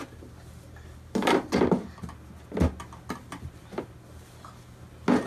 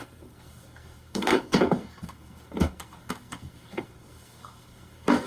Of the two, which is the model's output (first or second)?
second